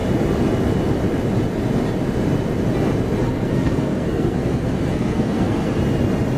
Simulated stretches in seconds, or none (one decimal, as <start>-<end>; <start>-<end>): 3.2-5.8